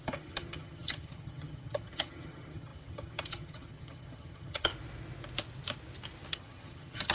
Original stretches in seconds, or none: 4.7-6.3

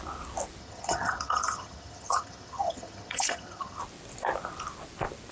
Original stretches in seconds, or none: 0.0-0.6; 3.8-5.3

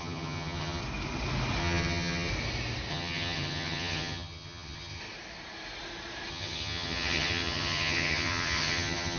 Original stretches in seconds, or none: 0.8-1.6; 2.3-2.9; 5.0-6.3

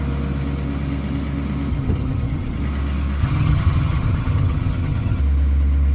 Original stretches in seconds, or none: 0.0-1.7; 2.6-3.2; 5.2-5.9

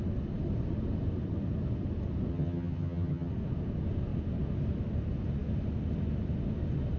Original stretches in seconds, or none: 0.0-2.3; 3.3-7.0

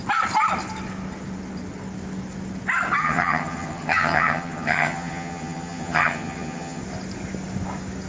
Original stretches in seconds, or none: 0.0-3.0; 6.8-8.1

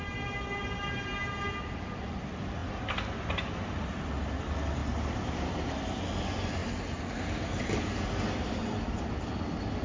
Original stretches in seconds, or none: 0.0-9.8

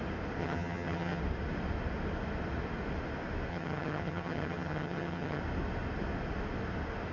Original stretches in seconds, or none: 0.0-0.4; 1.2-3.5; 5.4-7.1